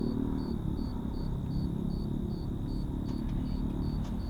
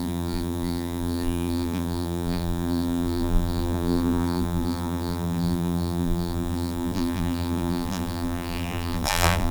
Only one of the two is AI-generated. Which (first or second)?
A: second